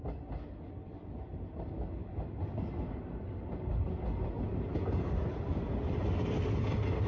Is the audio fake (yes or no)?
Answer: no